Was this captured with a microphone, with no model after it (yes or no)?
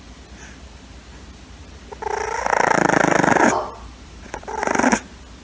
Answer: yes